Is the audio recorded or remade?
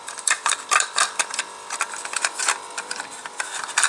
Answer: remade